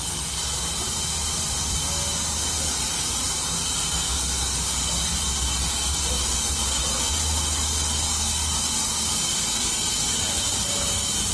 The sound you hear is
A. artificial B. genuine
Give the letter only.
B